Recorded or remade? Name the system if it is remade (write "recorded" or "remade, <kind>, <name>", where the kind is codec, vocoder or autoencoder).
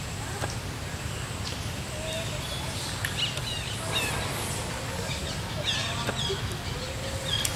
recorded